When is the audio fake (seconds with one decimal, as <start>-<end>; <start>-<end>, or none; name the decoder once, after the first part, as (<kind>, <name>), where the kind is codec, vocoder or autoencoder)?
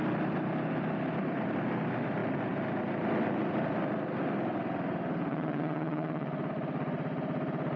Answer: 5.3-6.3 (vocoder, WaveNeXt)